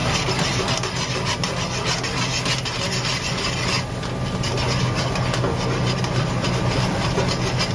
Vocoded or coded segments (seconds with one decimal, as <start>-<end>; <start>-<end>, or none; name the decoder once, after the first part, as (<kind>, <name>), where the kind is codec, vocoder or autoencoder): none